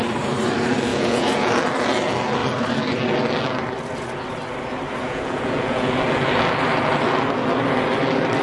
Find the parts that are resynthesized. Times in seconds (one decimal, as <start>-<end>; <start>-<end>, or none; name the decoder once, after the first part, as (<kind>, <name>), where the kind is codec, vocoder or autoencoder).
0.9-1.5 (vocoder, Vocos); 5.0-5.9